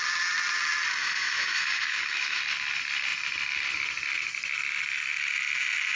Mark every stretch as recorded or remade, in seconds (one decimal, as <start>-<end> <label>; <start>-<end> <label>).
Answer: 0.0-1.0 recorded; 1.0-2.4 remade; 2.4-6.0 recorded